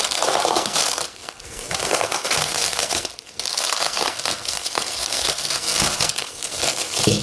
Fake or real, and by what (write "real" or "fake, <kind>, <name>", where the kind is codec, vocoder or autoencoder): fake, codec, SNAC